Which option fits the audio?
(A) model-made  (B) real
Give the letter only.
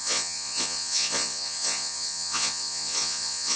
A